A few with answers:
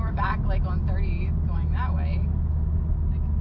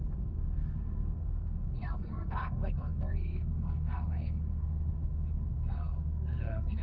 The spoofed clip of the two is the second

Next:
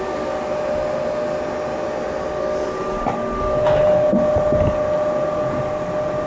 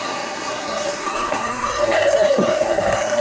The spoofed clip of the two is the second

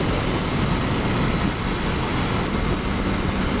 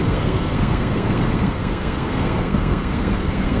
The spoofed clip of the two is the second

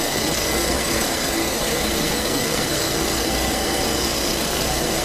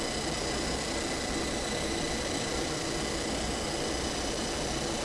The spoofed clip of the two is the first